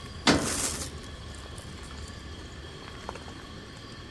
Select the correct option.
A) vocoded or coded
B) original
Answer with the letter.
B